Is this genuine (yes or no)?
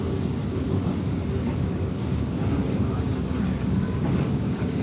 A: no